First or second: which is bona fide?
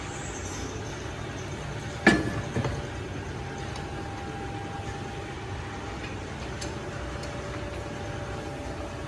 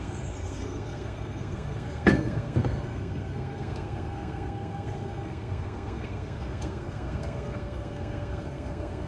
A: first